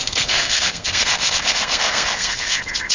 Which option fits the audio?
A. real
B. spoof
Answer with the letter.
B